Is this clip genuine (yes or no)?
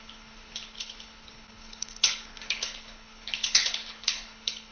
no